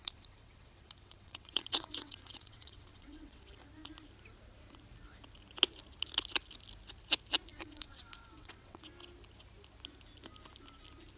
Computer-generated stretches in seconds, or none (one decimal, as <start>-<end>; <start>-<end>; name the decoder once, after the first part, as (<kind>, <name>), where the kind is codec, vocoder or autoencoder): 0.0-3.5 (vocoder, WaveNeXt); 7.5-8.8